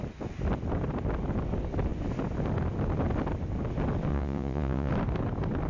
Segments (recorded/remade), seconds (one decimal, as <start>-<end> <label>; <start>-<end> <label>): 0.0-4.1 recorded; 4.1-4.9 remade; 4.9-5.7 recorded